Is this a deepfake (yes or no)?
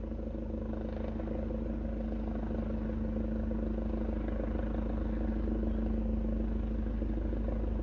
no